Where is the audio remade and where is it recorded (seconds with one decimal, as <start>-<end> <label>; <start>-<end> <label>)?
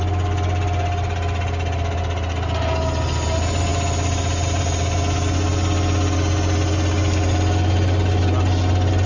0.0-9.1 recorded